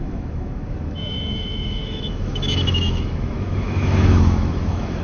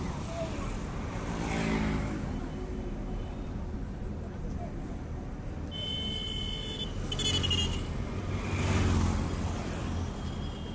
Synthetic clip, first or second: first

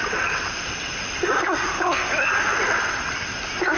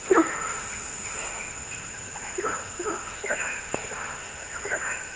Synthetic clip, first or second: second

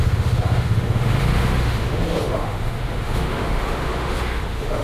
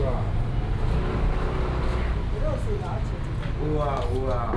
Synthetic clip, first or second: first